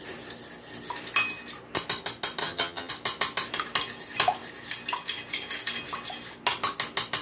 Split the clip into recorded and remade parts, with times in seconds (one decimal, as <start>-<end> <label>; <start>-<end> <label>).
0.0-2.4 recorded; 2.4-2.9 remade; 2.9-7.2 recorded